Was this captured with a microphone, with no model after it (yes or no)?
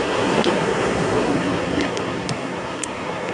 no